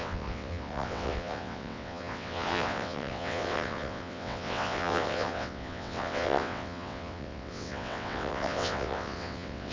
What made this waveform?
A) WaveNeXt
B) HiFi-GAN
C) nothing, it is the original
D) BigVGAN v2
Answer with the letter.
A